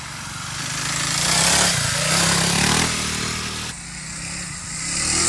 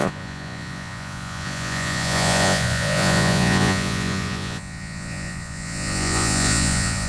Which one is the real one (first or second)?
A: first